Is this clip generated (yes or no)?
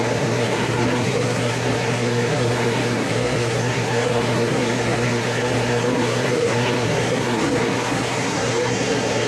yes